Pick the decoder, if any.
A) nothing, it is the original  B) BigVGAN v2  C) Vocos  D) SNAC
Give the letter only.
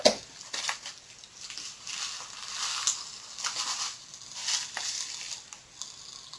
A